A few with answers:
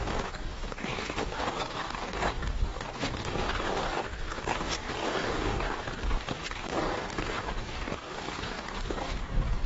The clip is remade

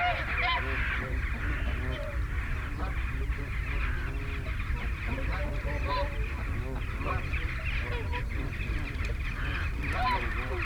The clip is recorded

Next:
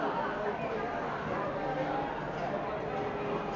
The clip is recorded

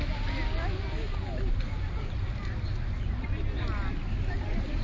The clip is recorded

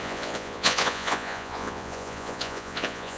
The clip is remade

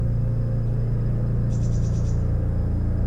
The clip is recorded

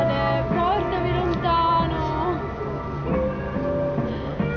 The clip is recorded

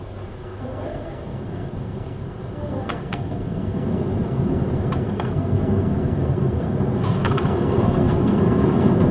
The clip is remade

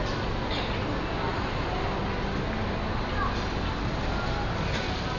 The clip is recorded